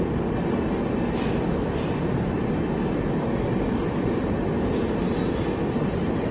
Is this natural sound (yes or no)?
yes